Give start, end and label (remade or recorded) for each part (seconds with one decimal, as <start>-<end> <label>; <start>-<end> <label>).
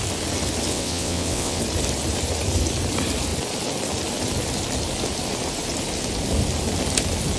0.0-0.7 recorded; 0.7-1.6 remade; 1.6-7.4 recorded